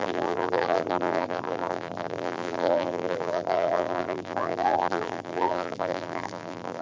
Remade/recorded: remade